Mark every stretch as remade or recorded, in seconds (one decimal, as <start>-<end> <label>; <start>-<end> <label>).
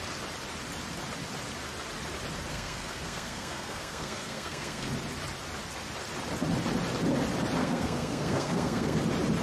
0.0-2.5 recorded; 2.5-4.9 remade; 4.9-7.6 recorded; 7.6-9.0 remade; 9.0-9.4 recorded